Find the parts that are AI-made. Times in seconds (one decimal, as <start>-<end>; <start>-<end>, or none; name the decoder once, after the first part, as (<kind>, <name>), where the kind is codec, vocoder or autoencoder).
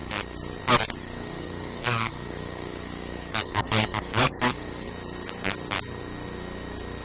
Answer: 1.0-4.9 (codec, DAC)